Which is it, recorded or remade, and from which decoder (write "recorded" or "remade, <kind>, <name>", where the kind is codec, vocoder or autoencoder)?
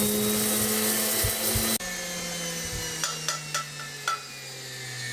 recorded